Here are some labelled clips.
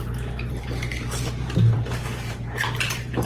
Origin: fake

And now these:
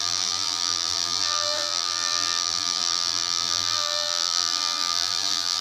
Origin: fake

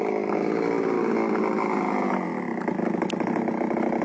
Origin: real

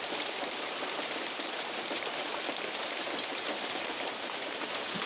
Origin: fake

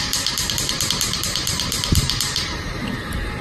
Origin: fake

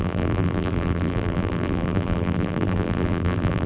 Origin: fake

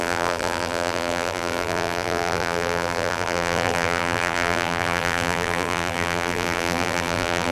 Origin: fake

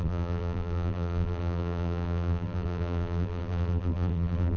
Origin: fake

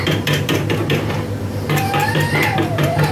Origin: fake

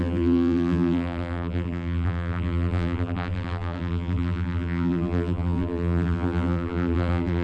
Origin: fake